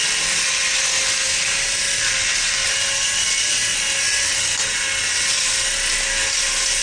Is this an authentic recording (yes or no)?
yes